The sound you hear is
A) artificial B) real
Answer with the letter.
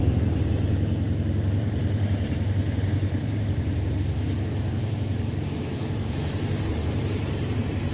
A